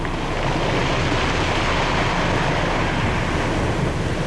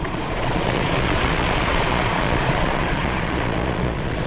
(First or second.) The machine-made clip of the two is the second